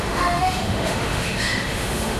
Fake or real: fake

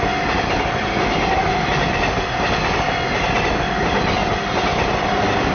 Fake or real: real